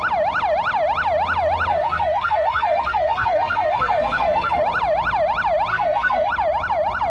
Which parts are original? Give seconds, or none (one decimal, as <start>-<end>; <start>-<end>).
0.0-1.7; 4.6-5.7; 6.3-7.1